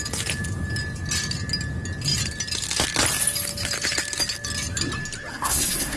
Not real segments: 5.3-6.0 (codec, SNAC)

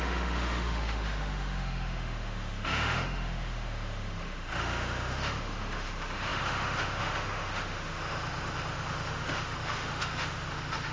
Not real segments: 0.0-10.9 (autoencoder, DAC-VAE)

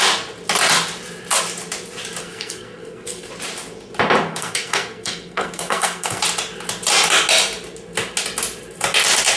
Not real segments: 2.2-3.3 (codec, SNAC); 4.3-6.2